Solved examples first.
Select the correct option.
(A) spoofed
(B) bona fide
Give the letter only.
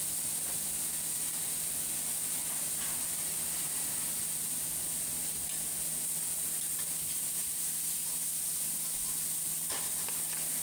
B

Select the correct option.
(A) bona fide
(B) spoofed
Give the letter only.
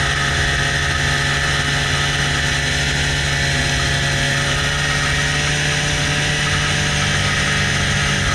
A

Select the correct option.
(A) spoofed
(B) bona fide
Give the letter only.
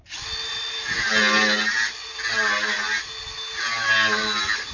B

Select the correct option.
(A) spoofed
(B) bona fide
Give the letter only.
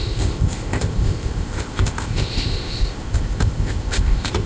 A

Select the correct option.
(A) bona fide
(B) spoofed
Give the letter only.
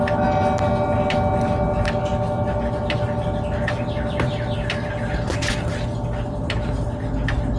A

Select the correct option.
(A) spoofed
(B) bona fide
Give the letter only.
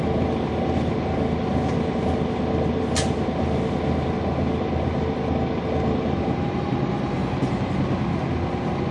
B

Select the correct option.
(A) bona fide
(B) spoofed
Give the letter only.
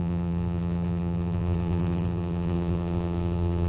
B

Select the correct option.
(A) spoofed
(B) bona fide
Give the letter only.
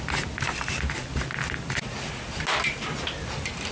B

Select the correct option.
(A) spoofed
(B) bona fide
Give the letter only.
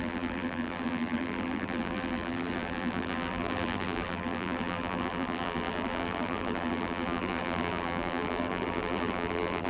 A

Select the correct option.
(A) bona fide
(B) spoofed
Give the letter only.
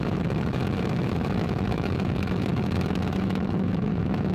B